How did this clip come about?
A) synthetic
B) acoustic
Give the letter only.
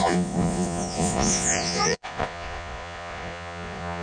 A